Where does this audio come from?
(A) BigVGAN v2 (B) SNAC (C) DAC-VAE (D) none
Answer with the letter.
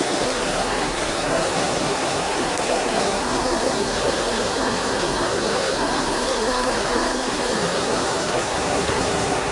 B